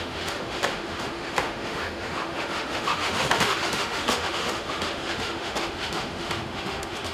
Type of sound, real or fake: fake